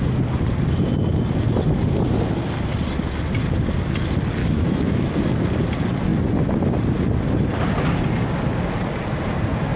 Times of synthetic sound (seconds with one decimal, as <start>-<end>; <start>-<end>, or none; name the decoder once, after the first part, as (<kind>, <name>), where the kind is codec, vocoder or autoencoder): 4.4-5.1 (autoencoder, DAC-VAE)